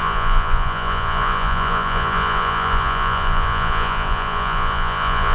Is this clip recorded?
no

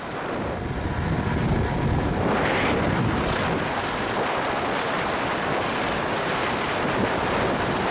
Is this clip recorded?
yes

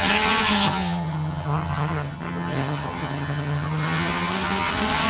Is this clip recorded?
no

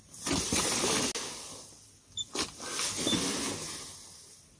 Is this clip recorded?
yes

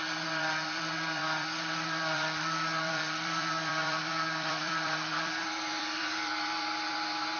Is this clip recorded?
no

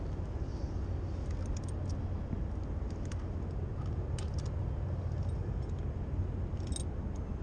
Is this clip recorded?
yes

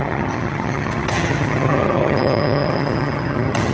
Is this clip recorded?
no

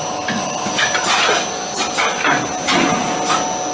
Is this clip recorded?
yes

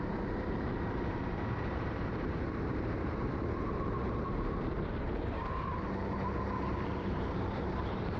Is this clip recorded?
no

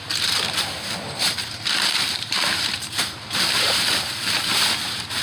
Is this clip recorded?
no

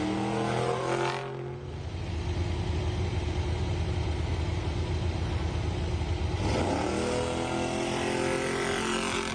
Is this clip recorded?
yes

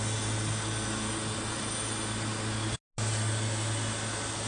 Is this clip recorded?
yes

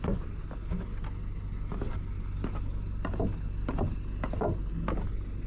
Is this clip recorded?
yes